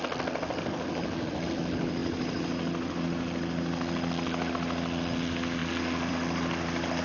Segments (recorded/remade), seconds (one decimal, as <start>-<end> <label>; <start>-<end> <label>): 0.0-7.0 recorded